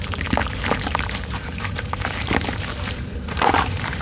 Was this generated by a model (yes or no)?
yes